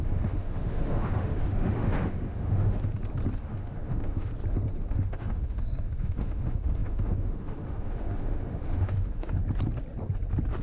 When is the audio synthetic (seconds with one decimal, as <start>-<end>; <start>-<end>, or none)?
0.0-2.9; 3.4-4.3; 4.9-9.4